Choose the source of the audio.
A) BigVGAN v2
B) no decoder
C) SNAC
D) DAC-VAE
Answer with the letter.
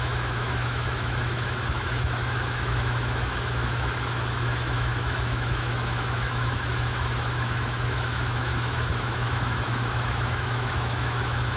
D